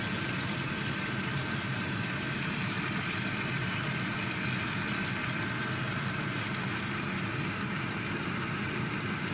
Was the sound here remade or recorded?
recorded